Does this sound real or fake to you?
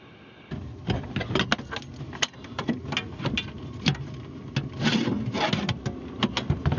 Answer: real